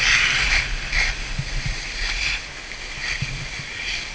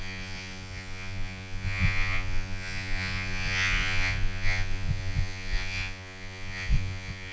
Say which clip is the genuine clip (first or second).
first